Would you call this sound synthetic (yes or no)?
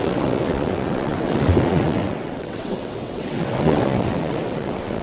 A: yes